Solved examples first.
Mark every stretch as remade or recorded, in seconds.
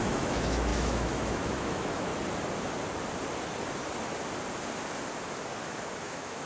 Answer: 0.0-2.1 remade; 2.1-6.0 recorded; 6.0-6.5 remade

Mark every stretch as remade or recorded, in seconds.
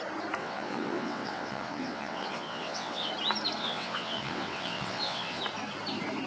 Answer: 0.0-0.4 recorded; 0.4-3.1 remade; 3.1-3.6 recorded; 3.6-5.4 remade; 5.4-6.3 recorded